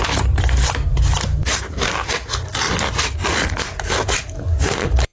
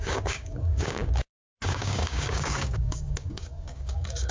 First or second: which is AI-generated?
second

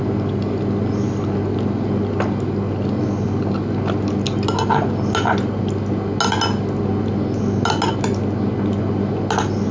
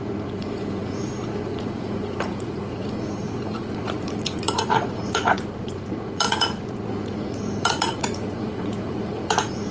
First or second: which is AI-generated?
second